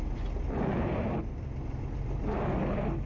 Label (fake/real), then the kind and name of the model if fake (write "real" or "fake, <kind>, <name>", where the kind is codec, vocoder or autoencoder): real